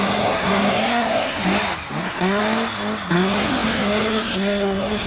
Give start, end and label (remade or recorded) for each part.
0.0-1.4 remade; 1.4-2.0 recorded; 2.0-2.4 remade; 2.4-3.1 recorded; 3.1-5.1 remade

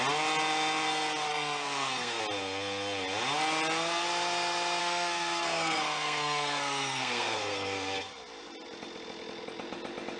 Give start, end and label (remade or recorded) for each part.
0.0-1.3 recorded; 1.3-2.2 remade; 2.2-4.8 recorded; 4.8-8.1 remade; 8.1-10.2 recorded

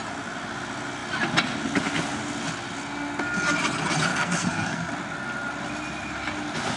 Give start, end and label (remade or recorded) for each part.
0.0-4.1 recorded; 4.1-4.9 remade; 4.9-6.8 recorded

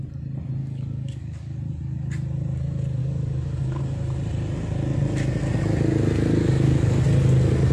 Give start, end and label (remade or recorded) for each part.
0.0-0.6 recorded; 0.6-1.6 remade; 1.6-3.0 recorded; 3.0-3.8 remade; 3.8-6.4 recorded; 6.4-6.9 remade; 6.9-7.7 recorded